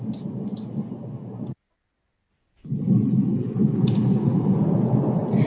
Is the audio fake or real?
real